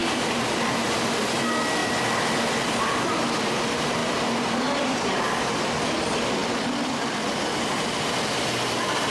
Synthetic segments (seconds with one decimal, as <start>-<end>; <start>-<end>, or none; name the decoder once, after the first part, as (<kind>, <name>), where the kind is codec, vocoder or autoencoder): 0.0-0.7 (vocoder, BigVGAN v2); 1.8-3.5; 4.0-5.4; 6.4-7.9